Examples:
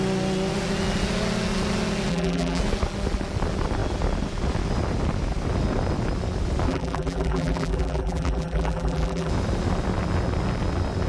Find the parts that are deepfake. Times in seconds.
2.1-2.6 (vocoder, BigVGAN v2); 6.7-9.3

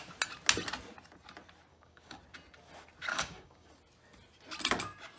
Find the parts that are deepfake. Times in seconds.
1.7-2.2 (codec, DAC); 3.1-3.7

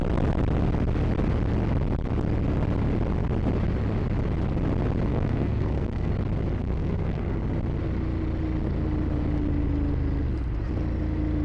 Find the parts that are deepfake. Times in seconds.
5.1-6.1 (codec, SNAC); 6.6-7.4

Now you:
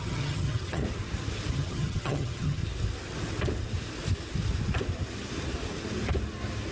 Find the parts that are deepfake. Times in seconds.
0.0-0.8 (vocoder, HiFi-GAN); 1.5-2.6